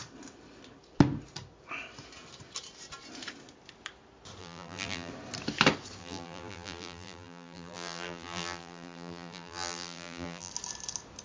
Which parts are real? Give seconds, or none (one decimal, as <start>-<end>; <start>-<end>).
0.0-4.4; 5.1-6.0; 10.5-11.2